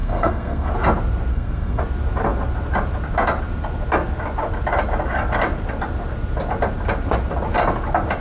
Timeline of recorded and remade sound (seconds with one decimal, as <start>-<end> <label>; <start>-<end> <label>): 0.0-0.7 remade; 0.7-1.3 recorded; 1.3-1.8 remade; 1.8-8.2 recorded

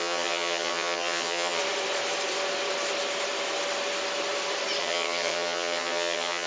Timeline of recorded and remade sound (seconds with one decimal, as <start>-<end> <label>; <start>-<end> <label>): 0.0-1.6 remade; 1.6-4.8 recorded; 4.8-6.5 remade

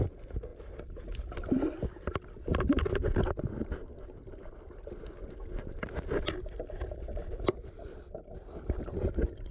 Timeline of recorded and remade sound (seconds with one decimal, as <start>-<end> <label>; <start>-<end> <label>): 0.0-9.5 recorded

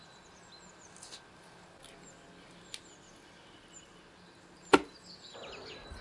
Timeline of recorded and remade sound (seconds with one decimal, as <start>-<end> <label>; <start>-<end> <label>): 0.0-6.0 recorded